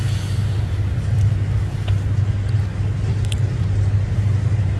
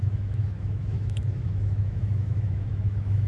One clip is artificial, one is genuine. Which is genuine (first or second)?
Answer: first